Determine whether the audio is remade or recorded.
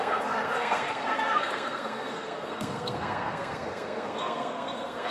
remade